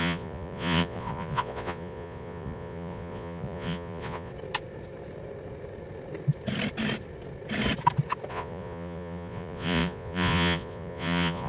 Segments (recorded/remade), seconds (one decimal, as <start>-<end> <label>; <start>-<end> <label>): 0.0-4.3 remade; 4.3-8.3 recorded; 8.3-11.5 remade